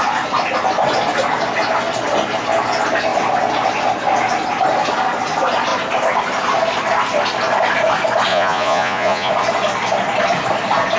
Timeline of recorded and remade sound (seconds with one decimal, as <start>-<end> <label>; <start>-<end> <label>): 0.0-8.3 recorded; 8.3-9.3 remade; 9.3-11.0 recorded